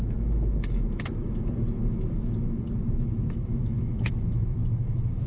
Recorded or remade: remade